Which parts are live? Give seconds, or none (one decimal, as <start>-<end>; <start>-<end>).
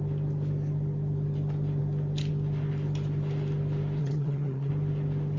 0.0-4.0; 4.7-5.4